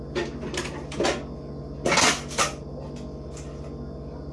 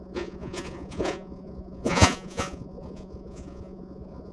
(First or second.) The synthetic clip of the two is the second